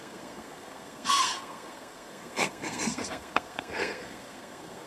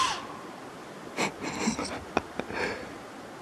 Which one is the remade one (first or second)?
first